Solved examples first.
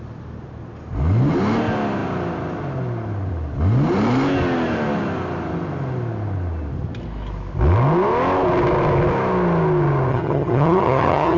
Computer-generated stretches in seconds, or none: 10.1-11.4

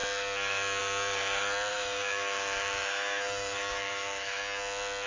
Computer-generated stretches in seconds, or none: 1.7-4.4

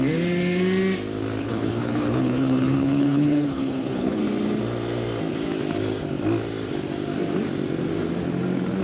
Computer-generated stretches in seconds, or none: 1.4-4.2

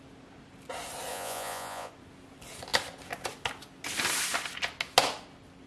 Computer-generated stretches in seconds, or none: 1.1-1.9